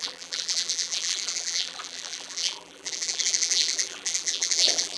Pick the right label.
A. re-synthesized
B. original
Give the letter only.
A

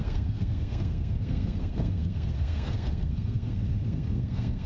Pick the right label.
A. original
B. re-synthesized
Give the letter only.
B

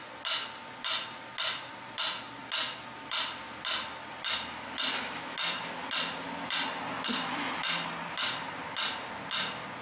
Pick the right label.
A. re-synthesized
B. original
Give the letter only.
B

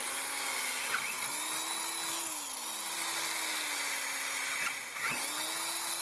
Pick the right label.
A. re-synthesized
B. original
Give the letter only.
B